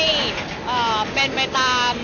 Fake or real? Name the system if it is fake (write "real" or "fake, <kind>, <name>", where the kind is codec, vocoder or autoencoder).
real